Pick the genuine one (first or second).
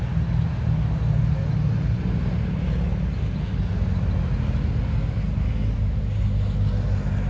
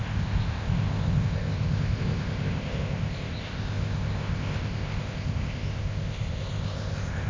first